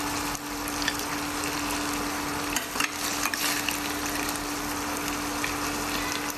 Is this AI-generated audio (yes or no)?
no